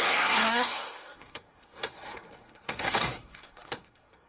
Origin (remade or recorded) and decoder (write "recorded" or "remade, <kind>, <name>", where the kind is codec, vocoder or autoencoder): remade, codec, SNAC